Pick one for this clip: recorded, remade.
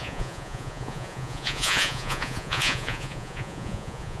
remade